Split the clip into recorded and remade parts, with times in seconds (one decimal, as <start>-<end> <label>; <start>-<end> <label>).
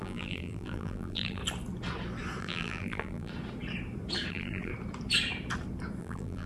0.0-1.4 remade; 1.4-2.4 recorded; 2.4-3.3 remade; 3.3-4.3 recorded; 4.3-4.7 remade; 4.7-6.0 recorded; 6.0-6.5 remade